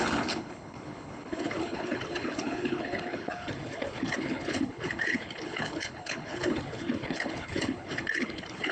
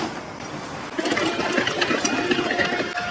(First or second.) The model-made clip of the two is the first